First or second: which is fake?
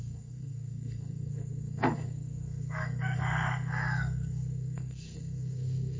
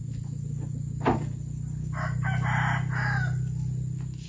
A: first